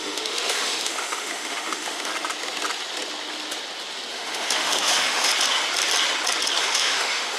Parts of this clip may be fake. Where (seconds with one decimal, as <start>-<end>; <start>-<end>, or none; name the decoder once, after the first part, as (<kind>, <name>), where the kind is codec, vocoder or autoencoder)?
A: 0.0-2.1 (autoencoder, DAC-VAE); 4.1-5.3; 6.6-7.4